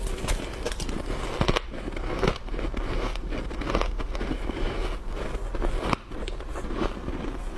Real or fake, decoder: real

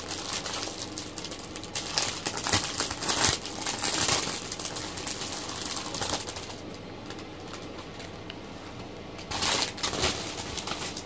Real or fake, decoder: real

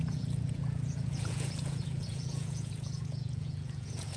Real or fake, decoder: fake, vocoder, Vocos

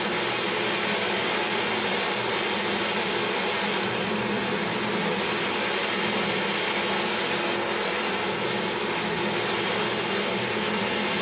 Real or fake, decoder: real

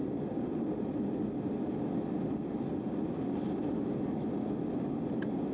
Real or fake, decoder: real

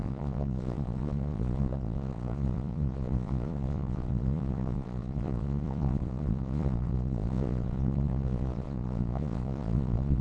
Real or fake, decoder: fake, vocoder, Vocos